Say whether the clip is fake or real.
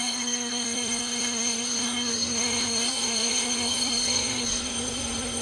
fake